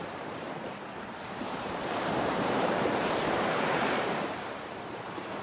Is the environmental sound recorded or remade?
remade